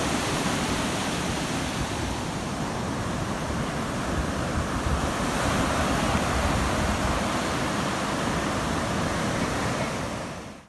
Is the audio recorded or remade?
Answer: remade